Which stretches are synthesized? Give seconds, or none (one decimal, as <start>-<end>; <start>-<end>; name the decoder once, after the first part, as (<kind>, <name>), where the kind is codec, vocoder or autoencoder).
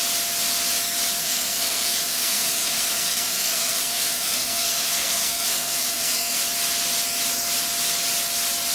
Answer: 1.2-6.4 (codec, SNAC)